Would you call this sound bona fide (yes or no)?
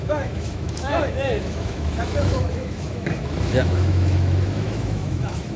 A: no